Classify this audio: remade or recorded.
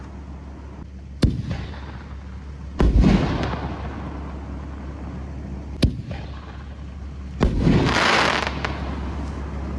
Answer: recorded